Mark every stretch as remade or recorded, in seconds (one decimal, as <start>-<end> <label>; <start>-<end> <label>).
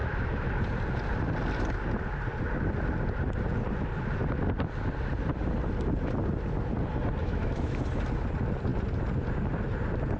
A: 0.0-0.5 remade; 0.5-7.2 recorded; 7.2-7.8 remade; 7.8-10.2 recorded